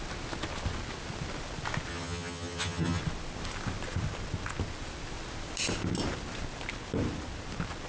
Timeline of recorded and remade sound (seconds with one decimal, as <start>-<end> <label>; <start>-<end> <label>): 0.0-1.9 recorded; 1.9-3.0 remade; 3.0-7.9 recorded